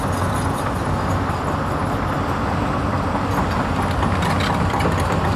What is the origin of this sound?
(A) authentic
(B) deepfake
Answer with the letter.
A